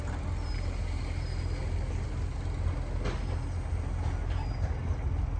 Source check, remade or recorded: recorded